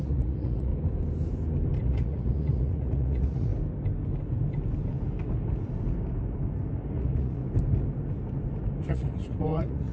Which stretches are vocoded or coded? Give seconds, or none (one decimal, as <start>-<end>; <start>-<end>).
0.0-0.7; 1.8-3.5; 6.9-7.4; 8.9-9.9